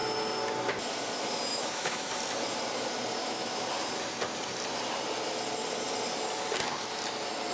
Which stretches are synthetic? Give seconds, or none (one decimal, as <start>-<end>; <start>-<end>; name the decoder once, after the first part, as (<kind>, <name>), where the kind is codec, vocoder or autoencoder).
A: 1.5-2.1 (autoencoder, DAC-VAE); 3.2-3.7